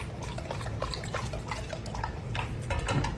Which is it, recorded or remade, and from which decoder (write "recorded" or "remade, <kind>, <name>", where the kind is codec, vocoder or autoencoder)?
recorded